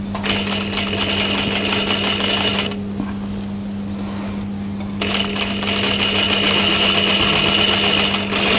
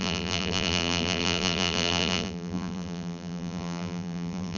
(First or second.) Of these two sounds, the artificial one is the second